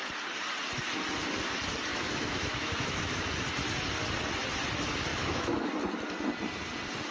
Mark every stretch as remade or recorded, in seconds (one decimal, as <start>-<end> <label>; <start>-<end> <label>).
0.0-1.9 recorded; 1.9-3.3 remade; 3.3-5.1 recorded; 5.1-5.7 remade; 5.7-7.1 recorded